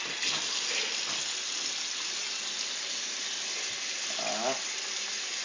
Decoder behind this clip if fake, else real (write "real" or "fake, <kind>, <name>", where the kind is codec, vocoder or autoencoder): real